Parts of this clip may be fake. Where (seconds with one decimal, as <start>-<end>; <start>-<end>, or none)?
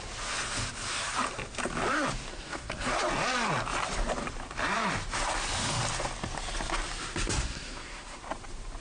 2.3-3.0; 7.4-8.2